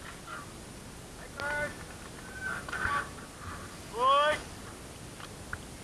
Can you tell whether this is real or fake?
real